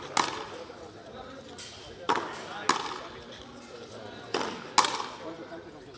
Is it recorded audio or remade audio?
recorded